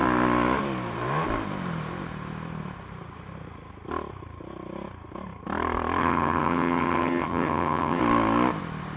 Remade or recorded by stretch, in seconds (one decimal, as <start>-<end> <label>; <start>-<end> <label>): 0.0-6.0 recorded; 6.0-8.0 remade; 8.0-9.0 recorded